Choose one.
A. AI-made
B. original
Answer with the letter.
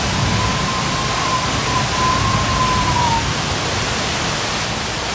B